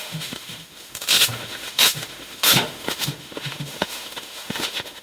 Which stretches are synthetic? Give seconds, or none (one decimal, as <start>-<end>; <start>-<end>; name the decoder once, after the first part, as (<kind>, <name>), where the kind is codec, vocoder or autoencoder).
0.0-5.0 (autoencoder, DAC-VAE)